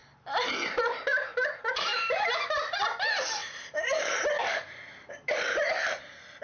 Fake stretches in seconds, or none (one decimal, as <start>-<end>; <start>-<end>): 1.1-2.8; 3.4-6.0